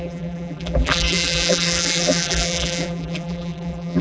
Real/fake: fake